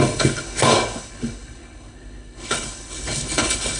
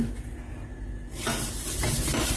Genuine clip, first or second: second